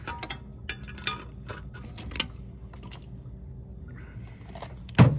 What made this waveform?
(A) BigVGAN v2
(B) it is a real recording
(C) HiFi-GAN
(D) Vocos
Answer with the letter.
B